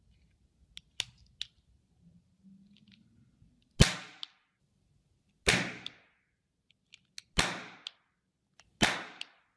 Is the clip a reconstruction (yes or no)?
no